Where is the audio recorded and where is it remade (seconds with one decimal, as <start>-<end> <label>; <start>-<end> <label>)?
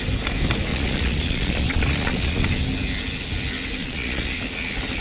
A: 0.0-0.7 recorded; 0.7-2.5 remade; 2.5-3.8 recorded; 3.8-4.4 remade; 4.4-5.0 recorded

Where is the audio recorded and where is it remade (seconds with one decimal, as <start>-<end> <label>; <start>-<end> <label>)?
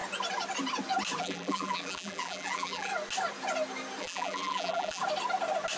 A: 0.0-1.2 recorded; 1.2-2.9 remade; 2.9-4.0 recorded; 4.0-5.0 remade; 5.0-5.8 recorded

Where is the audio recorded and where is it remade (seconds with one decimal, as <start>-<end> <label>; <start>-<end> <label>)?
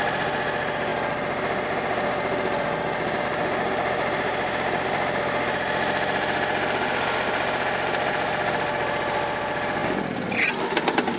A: 0.0-11.2 recorded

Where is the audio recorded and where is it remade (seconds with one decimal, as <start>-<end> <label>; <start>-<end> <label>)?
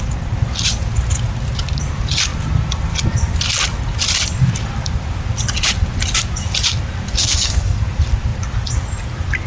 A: 0.0-7.2 recorded; 7.2-7.8 remade; 7.8-9.5 recorded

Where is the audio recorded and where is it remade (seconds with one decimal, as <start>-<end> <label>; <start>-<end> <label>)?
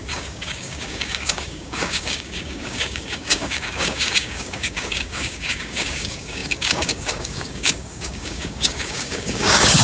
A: 0.0-9.8 remade